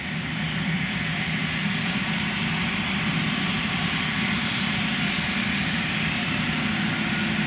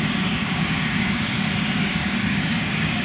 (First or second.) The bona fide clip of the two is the first